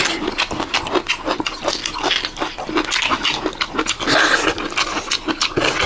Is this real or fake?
real